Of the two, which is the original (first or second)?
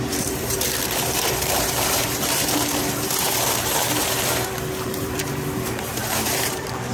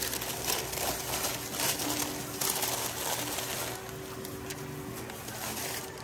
second